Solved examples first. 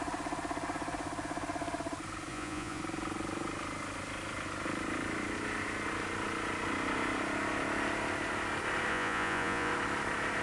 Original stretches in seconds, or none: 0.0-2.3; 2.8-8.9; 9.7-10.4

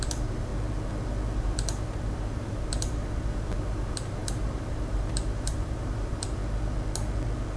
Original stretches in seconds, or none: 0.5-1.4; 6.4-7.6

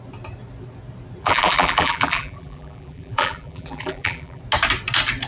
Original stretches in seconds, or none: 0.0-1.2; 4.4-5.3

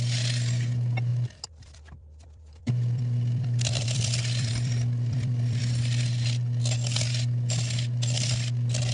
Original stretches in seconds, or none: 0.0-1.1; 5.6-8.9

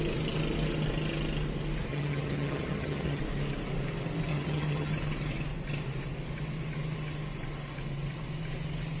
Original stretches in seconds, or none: 0.0-1.9; 3.2-4.3; 4.9-9.0